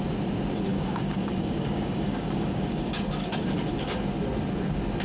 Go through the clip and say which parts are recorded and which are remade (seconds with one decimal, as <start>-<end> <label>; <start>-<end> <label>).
0.0-0.7 recorded; 0.7-3.7 remade; 3.7-5.0 recorded